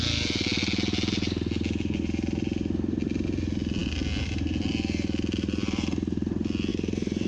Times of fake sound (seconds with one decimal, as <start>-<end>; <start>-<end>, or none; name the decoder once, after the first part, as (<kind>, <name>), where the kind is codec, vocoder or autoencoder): 6.7-7.3 (vocoder, BigVGAN v2)